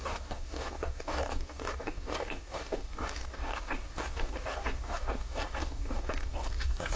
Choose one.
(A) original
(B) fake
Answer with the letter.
B